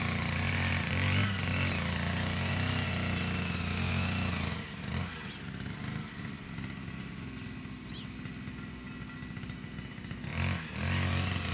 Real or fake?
real